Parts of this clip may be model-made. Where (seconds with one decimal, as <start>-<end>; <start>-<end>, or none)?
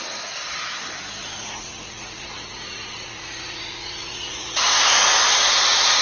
1.2-4.6